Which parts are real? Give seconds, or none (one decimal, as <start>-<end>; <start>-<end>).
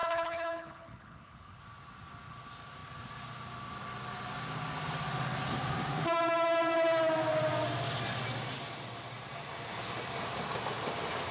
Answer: 1.6-11.3